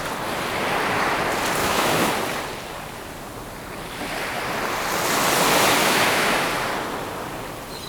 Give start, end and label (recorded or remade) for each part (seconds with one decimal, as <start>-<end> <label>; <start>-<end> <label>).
0.0-1.6 recorded; 1.6-2.1 remade; 2.1-5.8 recorded; 5.8-6.5 remade; 6.5-7.9 recorded